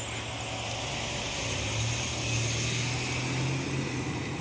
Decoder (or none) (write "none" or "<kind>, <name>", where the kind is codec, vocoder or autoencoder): none